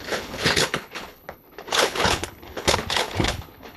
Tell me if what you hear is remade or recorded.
remade